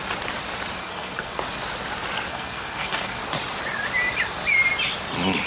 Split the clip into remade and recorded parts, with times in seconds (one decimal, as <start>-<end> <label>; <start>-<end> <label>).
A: 0.0-0.8 recorded; 0.8-1.4 remade; 1.4-2.3 recorded; 2.3-3.2 remade; 3.2-5.5 recorded